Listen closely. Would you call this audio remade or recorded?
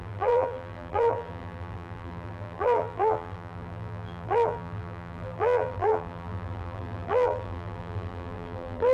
remade